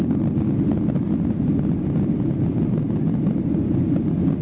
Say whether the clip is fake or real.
real